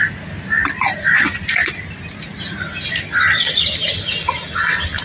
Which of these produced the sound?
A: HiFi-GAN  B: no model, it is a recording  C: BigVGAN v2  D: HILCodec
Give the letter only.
B